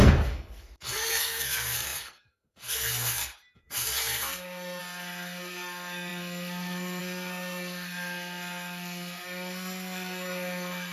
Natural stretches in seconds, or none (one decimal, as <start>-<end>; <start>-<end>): none